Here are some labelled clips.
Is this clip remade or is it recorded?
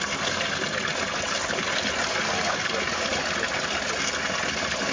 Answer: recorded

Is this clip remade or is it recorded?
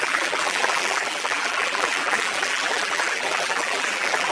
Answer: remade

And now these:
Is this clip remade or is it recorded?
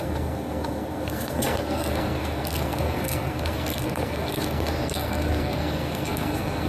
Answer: remade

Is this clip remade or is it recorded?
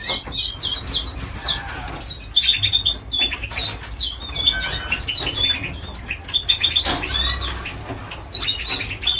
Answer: recorded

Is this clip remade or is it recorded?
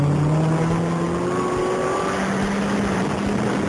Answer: recorded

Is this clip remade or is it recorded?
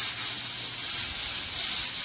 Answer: recorded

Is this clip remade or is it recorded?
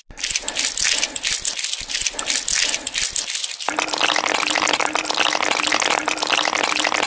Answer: recorded